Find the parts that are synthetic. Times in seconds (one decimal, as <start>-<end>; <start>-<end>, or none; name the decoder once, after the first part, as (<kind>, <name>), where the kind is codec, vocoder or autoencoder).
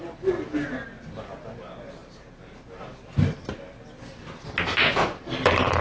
none